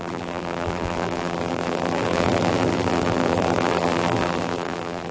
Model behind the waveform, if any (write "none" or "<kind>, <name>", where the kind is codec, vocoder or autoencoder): vocoder, BigVGAN v2